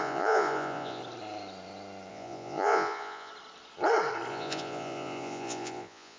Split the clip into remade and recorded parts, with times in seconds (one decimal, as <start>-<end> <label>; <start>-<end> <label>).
0.0-1.0 remade; 1.0-2.1 recorded; 2.1-3.3 remade; 3.3-4.3 recorded; 4.3-6.2 remade